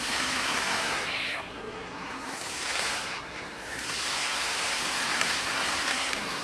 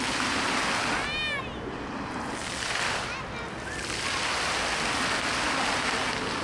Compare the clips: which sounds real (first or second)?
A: second